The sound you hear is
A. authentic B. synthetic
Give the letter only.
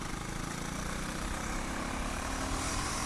B